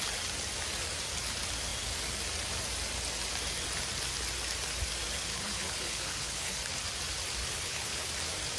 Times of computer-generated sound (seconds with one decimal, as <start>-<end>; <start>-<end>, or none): 5.3-6.6; 7.4-8.1